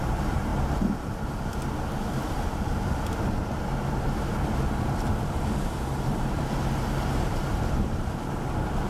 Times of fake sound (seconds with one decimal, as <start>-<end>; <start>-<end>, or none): 0.0-0.5; 4.8-8.9